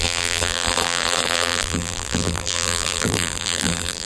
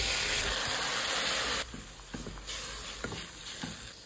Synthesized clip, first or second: first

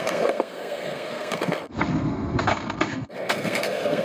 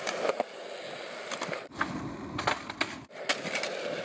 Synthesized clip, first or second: first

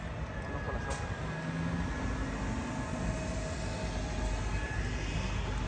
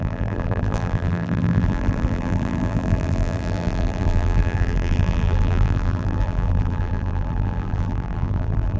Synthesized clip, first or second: second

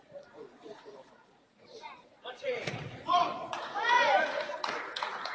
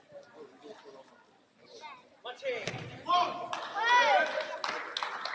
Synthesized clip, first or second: first